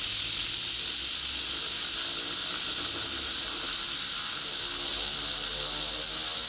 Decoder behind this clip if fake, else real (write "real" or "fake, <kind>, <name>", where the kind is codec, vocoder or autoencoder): real